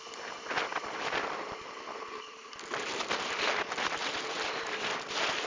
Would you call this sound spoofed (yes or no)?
no